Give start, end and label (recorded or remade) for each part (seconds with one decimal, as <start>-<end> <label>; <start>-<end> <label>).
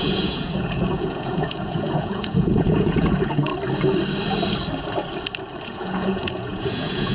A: 0.0-3.5 remade; 3.5-5.6 recorded; 5.6-7.1 remade